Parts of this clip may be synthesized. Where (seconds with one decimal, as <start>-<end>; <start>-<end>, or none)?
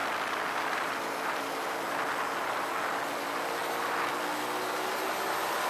none